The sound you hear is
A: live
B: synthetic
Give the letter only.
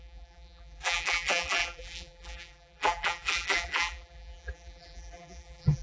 B